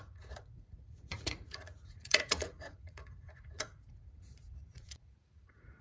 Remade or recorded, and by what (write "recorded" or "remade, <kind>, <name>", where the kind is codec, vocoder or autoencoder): remade, vocoder, Vocos